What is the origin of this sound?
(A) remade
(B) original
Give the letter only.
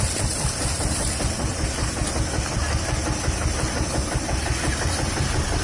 B